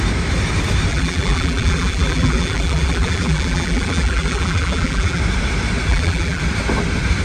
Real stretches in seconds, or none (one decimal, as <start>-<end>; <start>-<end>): 0.0-0.9; 5.2-5.9; 6.4-7.2